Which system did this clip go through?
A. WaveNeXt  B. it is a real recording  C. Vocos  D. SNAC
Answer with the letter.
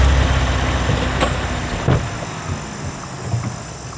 B